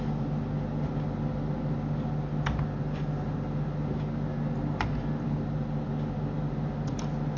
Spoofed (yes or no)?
no